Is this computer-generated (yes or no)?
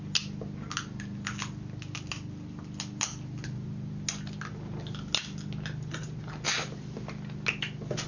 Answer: no